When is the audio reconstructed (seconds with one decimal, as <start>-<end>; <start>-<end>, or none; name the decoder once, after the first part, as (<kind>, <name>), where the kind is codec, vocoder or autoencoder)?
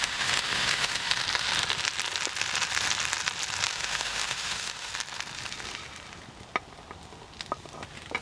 0.0-1.2 (autoencoder, DAC-VAE); 3.7-4.9